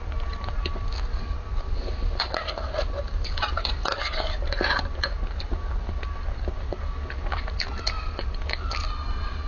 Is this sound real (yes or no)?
yes